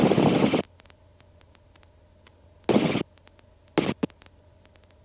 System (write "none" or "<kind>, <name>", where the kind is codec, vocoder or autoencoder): none